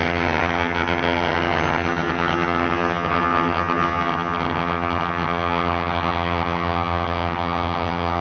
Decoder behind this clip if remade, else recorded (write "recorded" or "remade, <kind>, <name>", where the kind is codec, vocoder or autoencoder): remade, vocoder, HiFi-GAN